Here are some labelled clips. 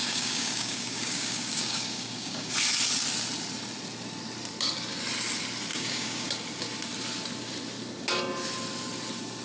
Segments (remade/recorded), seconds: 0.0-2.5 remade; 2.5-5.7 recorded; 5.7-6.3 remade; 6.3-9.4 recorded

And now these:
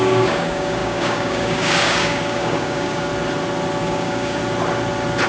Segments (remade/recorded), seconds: 0.0-3.1 remade; 3.1-3.8 recorded; 3.8-4.4 remade; 4.4-5.3 recorded